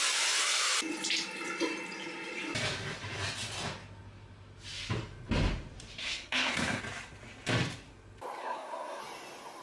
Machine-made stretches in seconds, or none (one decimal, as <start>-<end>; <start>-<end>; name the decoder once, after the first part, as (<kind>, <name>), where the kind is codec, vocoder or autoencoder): 6.0-6.8 (codec, SNAC); 8.4-9.0